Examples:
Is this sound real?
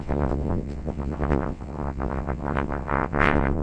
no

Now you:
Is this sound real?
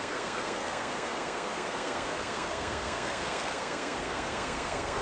no